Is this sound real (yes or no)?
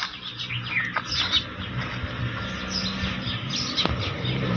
yes